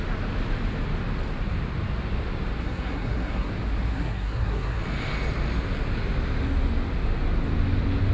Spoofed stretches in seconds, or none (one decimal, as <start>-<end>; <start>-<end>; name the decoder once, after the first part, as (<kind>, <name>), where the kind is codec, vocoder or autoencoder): 2.6-3.5 (codec, SNAC); 3.9-4.8